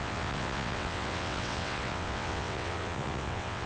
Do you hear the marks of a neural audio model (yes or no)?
yes